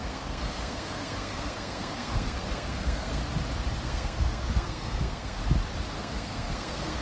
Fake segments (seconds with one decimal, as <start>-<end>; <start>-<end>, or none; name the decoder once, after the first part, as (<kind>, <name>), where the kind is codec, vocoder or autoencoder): 0.0-3.2 (codec, SNAC); 3.8-5.4; 6.0-7.0